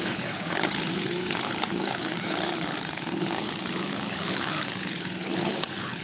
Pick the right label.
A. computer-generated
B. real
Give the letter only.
A